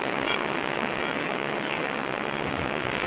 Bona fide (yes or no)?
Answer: no